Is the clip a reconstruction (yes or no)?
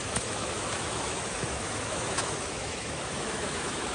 yes